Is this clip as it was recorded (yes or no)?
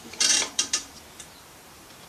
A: no